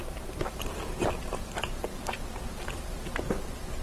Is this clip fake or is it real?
fake